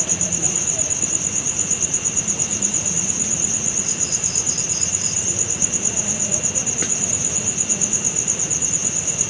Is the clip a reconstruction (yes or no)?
yes